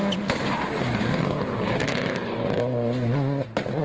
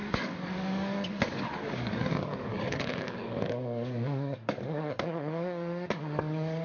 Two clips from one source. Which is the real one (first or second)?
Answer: first